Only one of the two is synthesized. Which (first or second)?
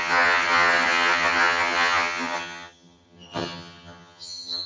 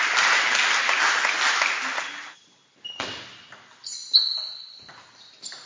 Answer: first